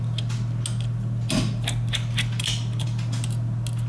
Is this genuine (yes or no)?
yes